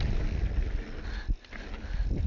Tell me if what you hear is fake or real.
real